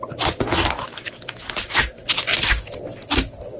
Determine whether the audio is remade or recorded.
recorded